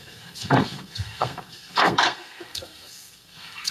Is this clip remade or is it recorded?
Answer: remade